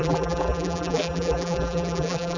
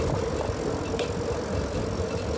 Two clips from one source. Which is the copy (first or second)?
first